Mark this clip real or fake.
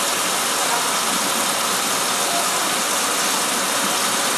real